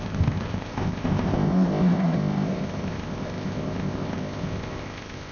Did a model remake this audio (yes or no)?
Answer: yes